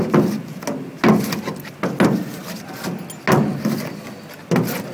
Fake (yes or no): no